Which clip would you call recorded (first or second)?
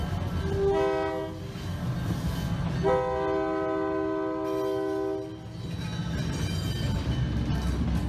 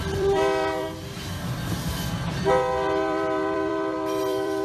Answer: first